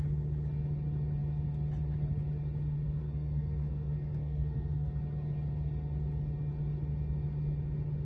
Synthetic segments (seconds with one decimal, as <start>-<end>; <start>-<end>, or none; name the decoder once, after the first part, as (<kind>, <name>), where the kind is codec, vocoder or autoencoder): 3.0-4.9 (codec, SNAC)